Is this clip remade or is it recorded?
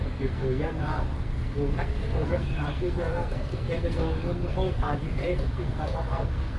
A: remade